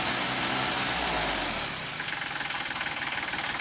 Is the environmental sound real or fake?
real